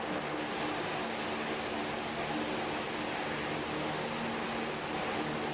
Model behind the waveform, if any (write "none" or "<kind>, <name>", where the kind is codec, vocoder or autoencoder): none